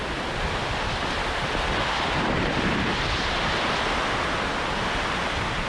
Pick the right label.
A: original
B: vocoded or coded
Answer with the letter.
A